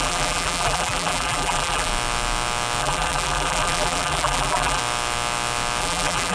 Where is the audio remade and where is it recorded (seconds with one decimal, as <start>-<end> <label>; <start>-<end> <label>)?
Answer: 0.0-1.9 remade; 1.9-2.8 recorded; 2.8-4.8 remade; 4.8-5.8 recorded; 5.8-6.3 remade